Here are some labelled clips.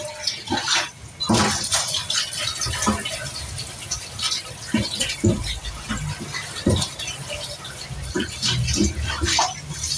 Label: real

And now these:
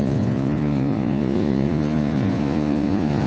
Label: fake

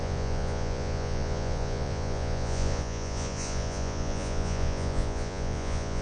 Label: fake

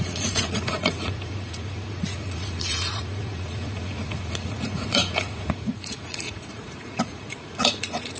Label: fake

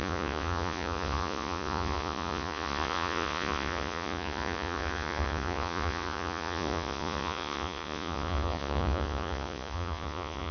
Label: fake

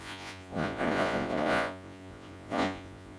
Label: fake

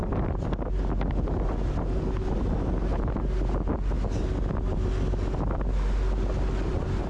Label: real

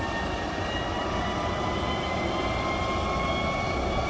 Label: real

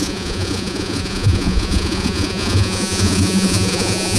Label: fake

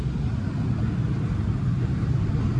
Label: real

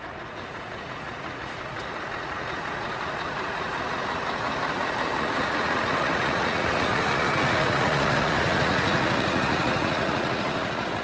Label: fake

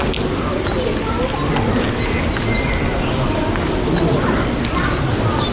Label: real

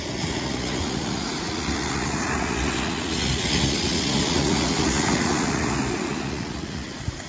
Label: fake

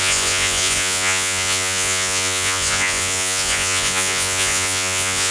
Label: fake